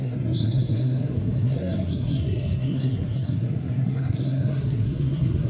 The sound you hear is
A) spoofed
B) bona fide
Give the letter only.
A